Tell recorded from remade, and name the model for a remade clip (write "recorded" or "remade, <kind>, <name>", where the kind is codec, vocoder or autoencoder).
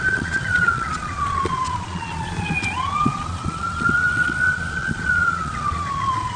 remade, vocoder, Vocos